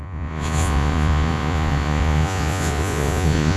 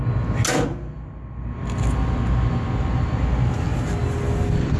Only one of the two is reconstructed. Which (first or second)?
first